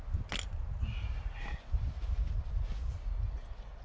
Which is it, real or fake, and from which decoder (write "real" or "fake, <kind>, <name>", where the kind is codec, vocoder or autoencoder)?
real